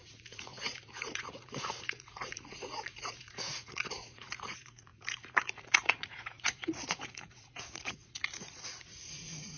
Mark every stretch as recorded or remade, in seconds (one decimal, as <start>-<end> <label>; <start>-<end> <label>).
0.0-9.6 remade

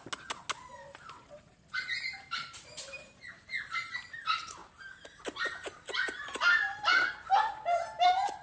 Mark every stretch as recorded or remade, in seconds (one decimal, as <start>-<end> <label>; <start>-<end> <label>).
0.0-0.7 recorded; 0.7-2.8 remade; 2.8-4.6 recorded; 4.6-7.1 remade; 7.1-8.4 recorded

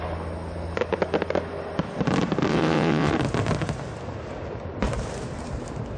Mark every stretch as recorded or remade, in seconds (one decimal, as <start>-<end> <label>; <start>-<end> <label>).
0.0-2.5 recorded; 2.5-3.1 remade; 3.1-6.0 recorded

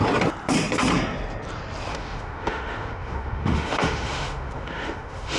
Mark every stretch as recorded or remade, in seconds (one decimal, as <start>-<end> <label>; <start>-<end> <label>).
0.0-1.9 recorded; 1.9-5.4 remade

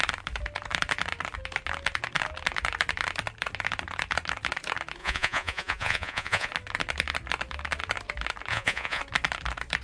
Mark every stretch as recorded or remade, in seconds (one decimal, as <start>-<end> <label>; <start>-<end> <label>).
0.0-5.0 recorded; 5.0-6.5 remade; 6.5-8.5 recorded; 8.5-9.0 remade; 9.0-9.8 recorded